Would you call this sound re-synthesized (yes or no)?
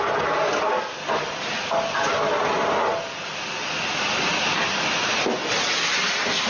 no